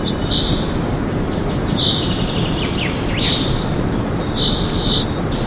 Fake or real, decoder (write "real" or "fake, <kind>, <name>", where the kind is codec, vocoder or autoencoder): real